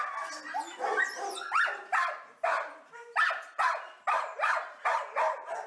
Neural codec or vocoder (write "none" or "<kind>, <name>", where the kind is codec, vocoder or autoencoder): none